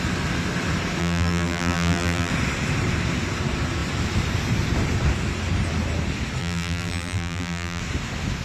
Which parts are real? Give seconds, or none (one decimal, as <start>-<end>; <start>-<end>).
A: 0.0-1.0; 2.3-6.4; 7.8-8.4